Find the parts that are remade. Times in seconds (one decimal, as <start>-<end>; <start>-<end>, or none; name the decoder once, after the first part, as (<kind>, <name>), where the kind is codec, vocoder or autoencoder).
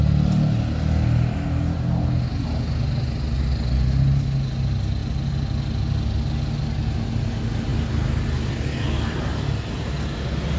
none